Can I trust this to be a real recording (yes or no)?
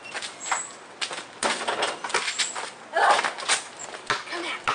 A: yes